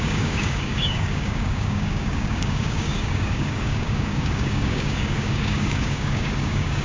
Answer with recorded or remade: remade